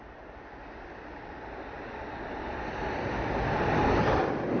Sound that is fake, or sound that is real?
real